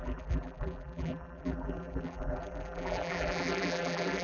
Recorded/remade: remade